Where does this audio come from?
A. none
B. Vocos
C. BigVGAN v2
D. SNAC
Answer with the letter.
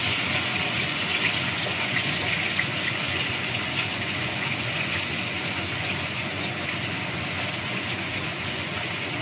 B